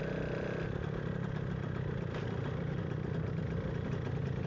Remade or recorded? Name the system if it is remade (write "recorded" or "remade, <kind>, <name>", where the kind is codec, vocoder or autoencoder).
recorded